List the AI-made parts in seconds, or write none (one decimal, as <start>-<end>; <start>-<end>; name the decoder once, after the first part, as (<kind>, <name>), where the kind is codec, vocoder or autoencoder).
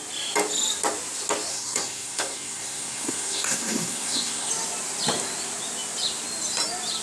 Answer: 1.5-4.5 (codec, SNAC)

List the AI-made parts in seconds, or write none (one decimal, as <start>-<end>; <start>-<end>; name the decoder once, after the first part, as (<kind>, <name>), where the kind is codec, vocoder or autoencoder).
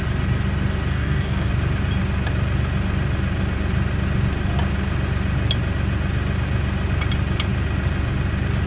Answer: 0.9-1.5 (codec, DAC)